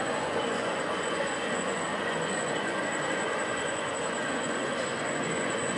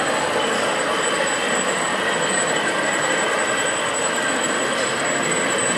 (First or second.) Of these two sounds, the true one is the second